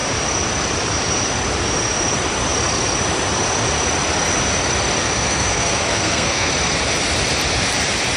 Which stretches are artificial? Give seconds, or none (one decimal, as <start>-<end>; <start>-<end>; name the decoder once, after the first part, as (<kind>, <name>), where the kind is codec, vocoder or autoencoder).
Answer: 5.0-6.5 (codec, SNAC)